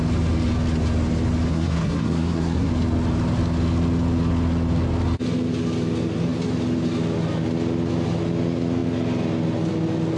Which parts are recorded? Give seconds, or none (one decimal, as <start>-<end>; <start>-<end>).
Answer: 0.0-1.5; 2.7-10.2